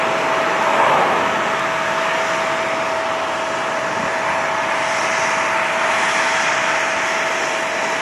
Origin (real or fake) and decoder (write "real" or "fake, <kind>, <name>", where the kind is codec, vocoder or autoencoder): real